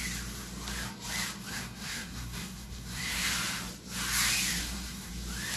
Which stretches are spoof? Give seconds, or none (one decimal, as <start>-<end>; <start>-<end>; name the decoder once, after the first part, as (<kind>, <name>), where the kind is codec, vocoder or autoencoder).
1.5-3.3 (codec, SNAC); 4.5-5.1